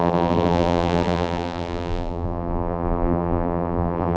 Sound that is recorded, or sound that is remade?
remade